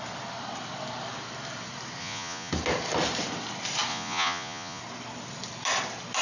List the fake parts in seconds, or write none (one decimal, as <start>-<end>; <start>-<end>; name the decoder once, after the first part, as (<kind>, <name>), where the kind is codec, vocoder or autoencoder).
2.0-2.5 (vocoder, Vocos); 3.9-4.8